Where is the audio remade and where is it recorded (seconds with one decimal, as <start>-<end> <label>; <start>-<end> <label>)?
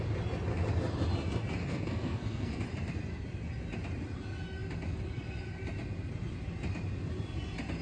0.0-1.6 recorded; 1.6-2.6 remade; 2.6-7.8 recorded